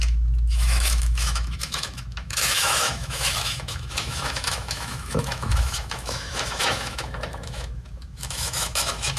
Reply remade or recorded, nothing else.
remade